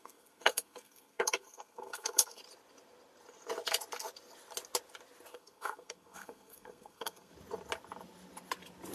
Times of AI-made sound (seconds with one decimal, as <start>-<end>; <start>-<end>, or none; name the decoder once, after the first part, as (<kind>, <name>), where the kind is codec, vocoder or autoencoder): 0.0-2.4 (codec, SNAC); 5.3-7.3